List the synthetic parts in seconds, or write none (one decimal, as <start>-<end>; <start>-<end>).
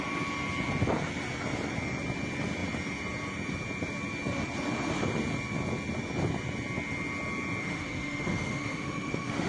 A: 7.6-9.5